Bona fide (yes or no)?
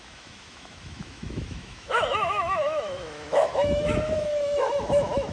no